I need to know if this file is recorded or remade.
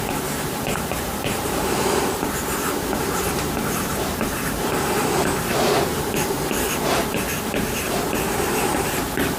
remade